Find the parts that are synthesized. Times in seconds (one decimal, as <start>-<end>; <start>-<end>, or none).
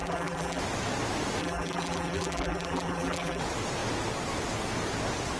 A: 0.0-0.6; 1.4-3.4